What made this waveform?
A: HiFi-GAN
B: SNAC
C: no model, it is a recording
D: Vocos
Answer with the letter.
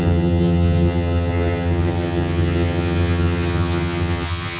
A